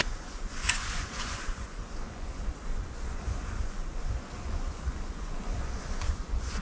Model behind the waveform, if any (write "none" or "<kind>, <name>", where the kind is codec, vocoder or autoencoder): vocoder, Vocos